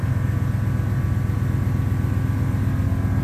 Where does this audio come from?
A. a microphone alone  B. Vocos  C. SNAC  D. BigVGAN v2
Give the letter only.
A